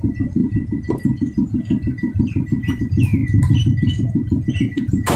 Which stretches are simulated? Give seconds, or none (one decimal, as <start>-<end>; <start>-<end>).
0.0-3.2; 4.5-5.2